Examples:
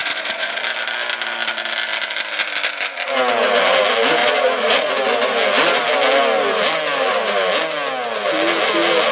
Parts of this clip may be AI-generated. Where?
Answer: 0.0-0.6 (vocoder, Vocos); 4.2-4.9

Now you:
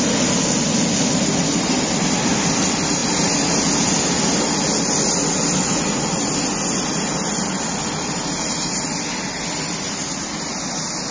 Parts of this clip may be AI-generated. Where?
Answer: none